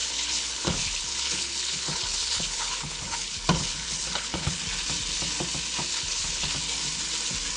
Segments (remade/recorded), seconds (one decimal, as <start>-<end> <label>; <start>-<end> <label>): 0.0-4.6 remade; 4.6-5.9 recorded; 5.9-6.5 remade; 6.5-7.6 recorded